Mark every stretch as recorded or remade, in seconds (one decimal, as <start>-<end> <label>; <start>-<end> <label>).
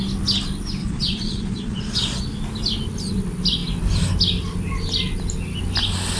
0.0-0.8 recorded; 0.8-2.2 remade; 2.2-6.2 recorded